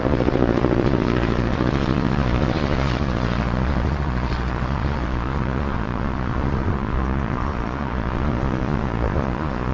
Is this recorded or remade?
remade